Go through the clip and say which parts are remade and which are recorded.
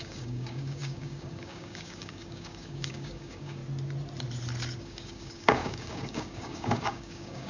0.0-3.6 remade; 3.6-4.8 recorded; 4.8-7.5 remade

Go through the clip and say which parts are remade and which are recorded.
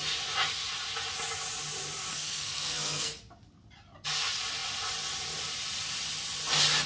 0.0-2.1 recorded; 2.1-3.2 remade; 3.2-6.9 recorded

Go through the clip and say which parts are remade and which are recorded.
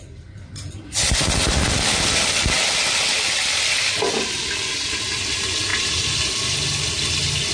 0.0-7.5 recorded